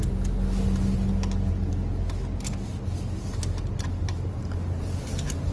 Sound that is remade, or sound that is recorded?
recorded